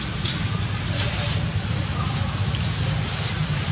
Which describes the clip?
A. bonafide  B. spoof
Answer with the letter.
A